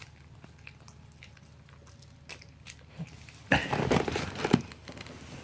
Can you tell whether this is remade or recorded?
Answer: recorded